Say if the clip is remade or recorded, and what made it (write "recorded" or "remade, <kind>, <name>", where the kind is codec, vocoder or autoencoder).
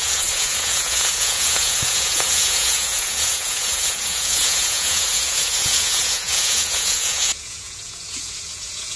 remade, vocoder, Vocos